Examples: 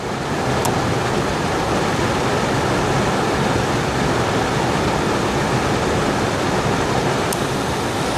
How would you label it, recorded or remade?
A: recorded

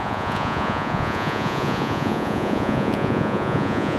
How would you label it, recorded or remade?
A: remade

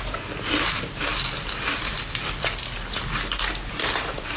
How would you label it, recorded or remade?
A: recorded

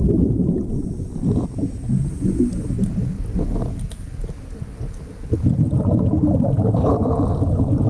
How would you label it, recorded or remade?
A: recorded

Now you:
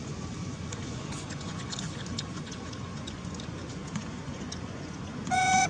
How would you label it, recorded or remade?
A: remade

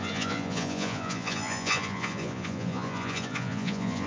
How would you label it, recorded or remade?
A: remade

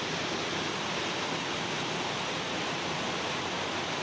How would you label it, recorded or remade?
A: recorded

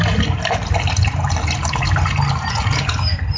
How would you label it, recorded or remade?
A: recorded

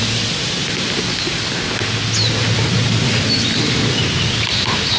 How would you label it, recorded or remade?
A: recorded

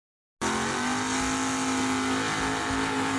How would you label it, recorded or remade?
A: recorded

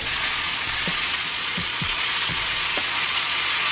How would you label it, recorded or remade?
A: remade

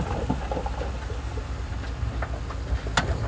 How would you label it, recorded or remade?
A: recorded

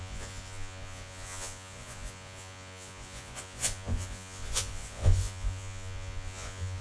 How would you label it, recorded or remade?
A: remade